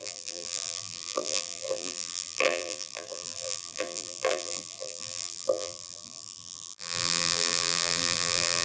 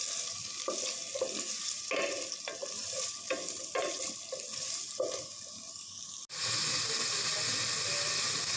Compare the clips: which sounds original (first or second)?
second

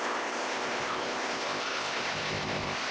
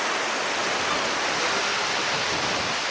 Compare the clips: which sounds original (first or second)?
second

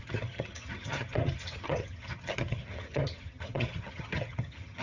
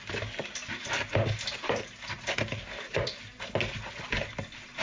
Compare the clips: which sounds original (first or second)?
second